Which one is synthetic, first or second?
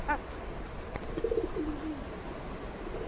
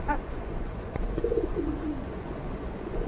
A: second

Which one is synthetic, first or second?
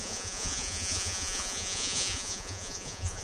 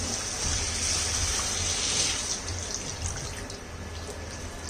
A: first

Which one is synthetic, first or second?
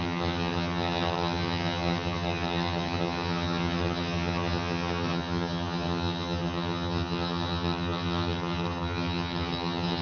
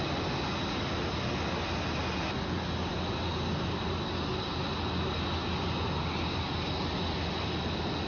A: first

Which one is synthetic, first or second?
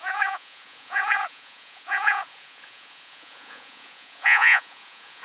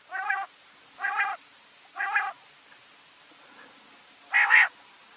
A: first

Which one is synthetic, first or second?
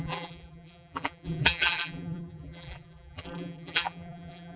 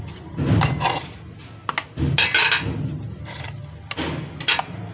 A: first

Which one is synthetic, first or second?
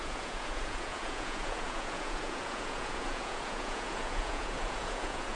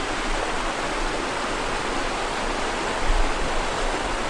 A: first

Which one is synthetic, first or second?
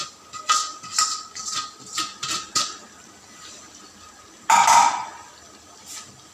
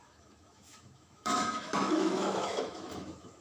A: second